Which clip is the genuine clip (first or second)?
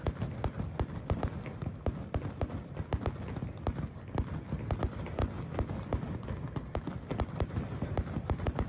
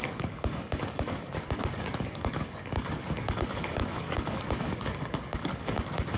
first